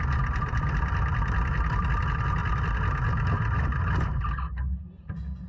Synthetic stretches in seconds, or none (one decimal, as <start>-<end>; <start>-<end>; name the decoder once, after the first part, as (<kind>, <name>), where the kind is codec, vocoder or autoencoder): 0.0-2.4 (vocoder, BigVGAN v2)